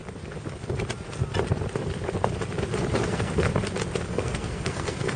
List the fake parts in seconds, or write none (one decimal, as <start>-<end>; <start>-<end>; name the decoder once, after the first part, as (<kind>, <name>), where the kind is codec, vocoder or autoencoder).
3.1-3.5 (codec, SNAC); 4.1-5.2